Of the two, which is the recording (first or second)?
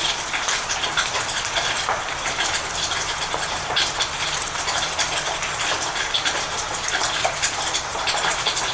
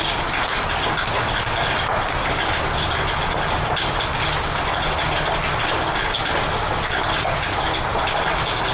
second